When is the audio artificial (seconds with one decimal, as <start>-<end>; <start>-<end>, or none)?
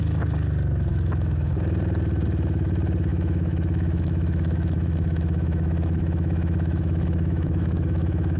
0.9-1.5; 3.1-8.4